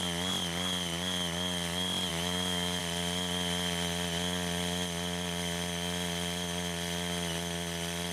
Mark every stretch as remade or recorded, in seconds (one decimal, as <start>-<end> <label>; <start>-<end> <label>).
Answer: 0.0-2.1 recorded; 2.1-2.8 remade; 2.8-8.1 recorded